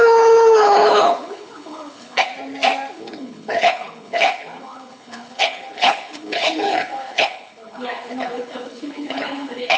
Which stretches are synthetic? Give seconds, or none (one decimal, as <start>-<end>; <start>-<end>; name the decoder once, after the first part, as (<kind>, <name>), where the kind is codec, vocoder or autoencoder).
0.0-2.3 (codec, HILCodec); 2.9-9.8